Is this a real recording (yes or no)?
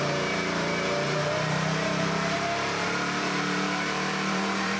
no